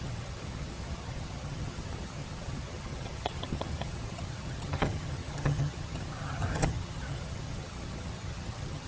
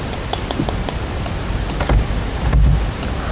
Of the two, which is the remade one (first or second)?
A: first